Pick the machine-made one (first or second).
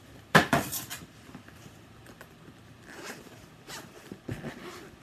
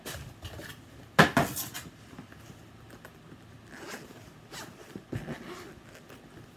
first